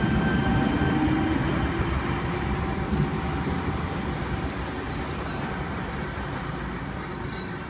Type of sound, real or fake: real